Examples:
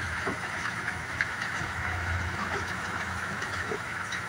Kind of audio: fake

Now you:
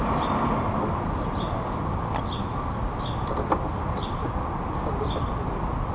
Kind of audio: real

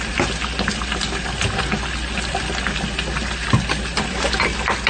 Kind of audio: real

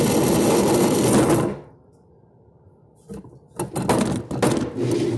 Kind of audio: real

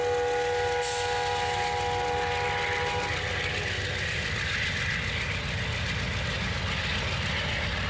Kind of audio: real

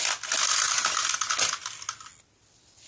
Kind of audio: real